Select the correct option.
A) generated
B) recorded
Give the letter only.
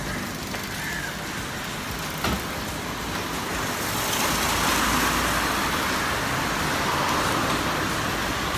B